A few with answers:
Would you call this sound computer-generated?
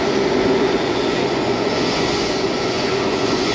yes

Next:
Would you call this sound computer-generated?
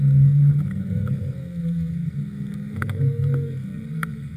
yes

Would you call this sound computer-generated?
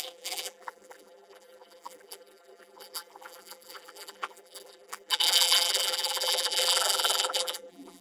yes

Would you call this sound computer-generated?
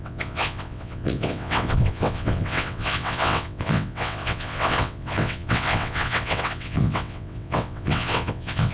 yes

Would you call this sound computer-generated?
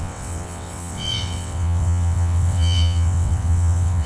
yes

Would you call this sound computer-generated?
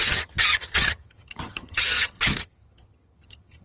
yes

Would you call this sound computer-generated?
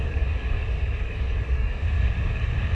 yes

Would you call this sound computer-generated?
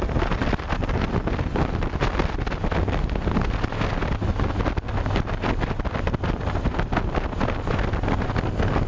no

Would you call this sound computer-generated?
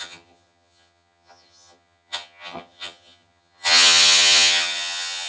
yes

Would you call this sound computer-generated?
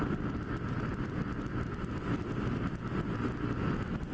no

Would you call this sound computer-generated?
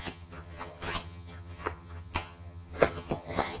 yes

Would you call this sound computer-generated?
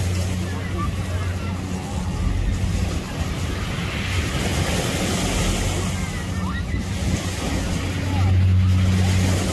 no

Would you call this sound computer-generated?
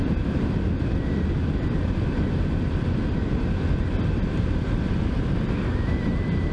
no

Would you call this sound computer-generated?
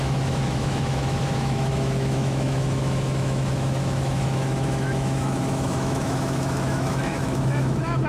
yes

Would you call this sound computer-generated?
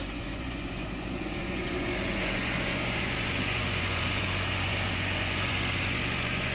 yes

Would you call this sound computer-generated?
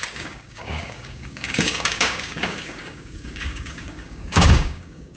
yes